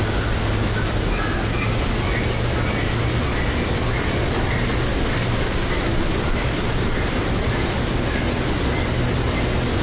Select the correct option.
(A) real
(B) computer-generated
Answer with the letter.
A